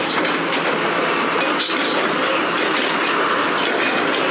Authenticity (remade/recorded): recorded